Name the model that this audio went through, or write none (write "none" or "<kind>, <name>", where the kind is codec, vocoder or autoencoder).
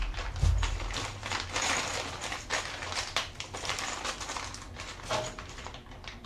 none